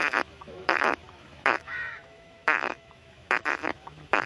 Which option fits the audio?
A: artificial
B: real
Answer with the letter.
A